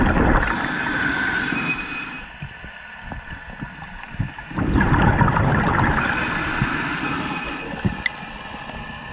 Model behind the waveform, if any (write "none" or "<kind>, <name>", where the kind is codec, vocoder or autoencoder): none